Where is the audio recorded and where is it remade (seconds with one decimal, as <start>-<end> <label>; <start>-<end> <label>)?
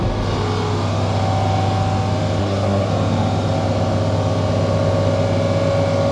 0.0-2.4 recorded; 2.4-2.9 remade; 2.9-6.1 recorded